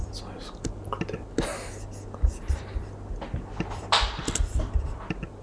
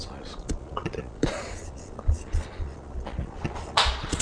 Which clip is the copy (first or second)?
second